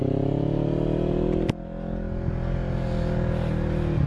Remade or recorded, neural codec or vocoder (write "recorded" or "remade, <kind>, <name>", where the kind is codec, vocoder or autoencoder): recorded